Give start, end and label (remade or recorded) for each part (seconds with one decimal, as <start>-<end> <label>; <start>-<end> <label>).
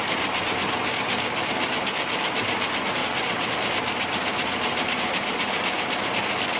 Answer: 0.0-3.0 recorded; 3.0-3.5 remade; 3.5-6.6 recorded